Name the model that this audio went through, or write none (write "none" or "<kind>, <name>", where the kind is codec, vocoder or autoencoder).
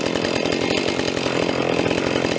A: none